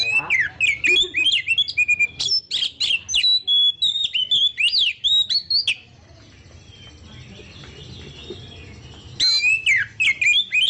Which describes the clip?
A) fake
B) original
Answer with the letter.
B